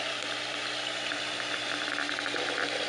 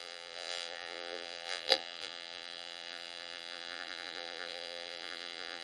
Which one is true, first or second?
first